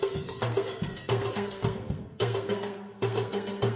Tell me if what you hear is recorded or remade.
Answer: remade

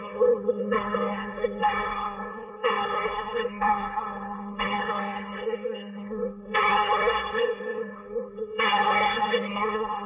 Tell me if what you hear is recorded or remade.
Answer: remade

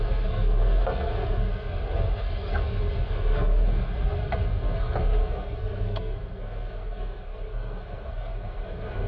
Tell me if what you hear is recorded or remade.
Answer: remade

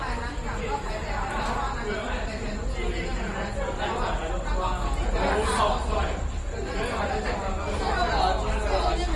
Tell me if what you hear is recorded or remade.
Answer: recorded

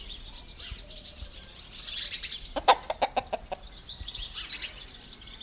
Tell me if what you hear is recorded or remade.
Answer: recorded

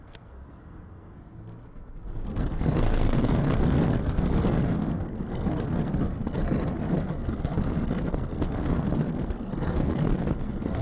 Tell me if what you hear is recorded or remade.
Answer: remade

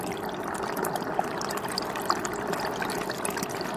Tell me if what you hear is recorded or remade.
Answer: recorded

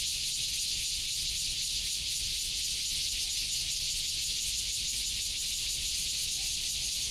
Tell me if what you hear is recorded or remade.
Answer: recorded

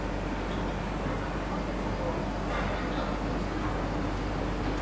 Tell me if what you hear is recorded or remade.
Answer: recorded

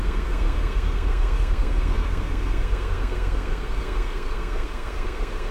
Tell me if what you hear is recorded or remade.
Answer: remade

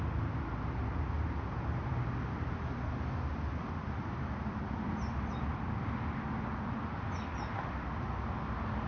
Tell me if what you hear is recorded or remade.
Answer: recorded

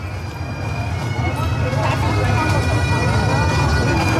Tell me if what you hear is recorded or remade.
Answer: recorded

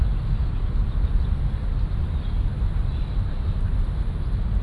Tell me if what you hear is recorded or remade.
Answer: recorded